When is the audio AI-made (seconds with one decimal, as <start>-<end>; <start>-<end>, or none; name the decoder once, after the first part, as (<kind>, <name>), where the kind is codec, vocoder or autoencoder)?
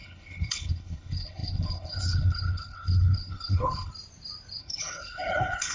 0.0-3.9 (codec, HILCodec); 4.6-5.7